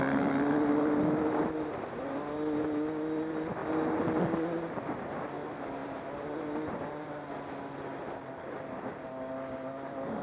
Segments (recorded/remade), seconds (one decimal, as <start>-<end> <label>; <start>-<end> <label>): 0.0-5.8 recorded; 5.8-7.3 remade; 7.3-10.2 recorded